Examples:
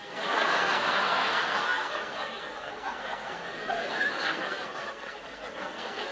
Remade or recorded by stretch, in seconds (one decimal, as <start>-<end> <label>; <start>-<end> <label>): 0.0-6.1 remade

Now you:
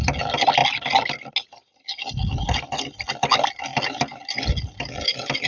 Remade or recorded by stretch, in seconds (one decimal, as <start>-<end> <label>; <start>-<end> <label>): 0.0-5.5 recorded

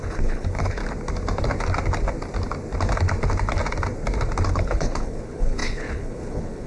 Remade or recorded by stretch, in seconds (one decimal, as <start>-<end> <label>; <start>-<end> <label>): 0.0-0.8 remade; 0.8-4.5 recorded; 4.5-6.7 remade

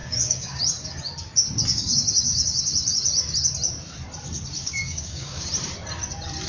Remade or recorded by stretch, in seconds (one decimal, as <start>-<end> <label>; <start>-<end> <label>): 0.0-0.6 remade; 0.6-1.7 recorded; 1.7-2.6 remade; 2.6-4.6 recorded; 4.6-5.5 remade; 5.5-6.5 recorded